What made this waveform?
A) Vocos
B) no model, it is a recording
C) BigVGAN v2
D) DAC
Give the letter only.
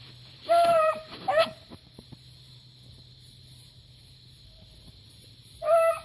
C